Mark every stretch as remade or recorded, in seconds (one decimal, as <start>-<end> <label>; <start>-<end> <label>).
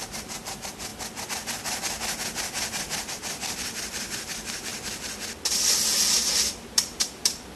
0.0-0.9 remade; 0.9-3.1 recorded; 3.1-4.7 remade; 4.7-6.4 recorded; 6.4-7.6 remade